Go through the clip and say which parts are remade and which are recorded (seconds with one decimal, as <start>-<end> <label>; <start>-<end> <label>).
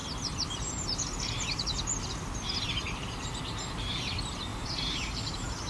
0.0-5.7 recorded